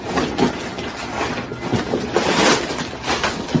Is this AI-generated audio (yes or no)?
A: no